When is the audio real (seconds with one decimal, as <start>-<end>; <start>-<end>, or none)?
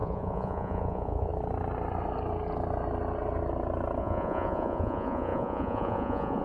1.3-4.0